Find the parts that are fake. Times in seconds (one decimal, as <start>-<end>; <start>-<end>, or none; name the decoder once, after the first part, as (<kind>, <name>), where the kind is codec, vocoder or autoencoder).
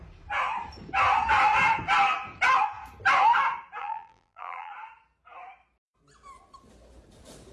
3.8-4.7 (vocoder, BigVGAN v2)